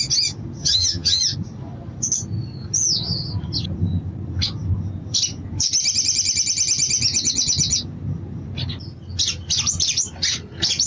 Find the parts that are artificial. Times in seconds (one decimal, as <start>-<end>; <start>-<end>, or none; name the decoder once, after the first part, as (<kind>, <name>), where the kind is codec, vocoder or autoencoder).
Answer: 0.6-1.2 (vocoder, HiFi-GAN)